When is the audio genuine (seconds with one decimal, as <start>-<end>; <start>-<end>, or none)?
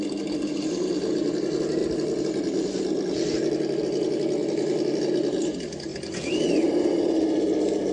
0.0-1.8; 3.8-4.4; 5.0-7.9